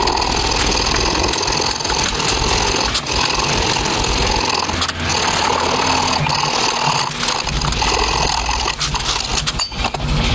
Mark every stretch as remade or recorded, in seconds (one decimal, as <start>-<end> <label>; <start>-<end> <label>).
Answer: 0.0-10.3 recorded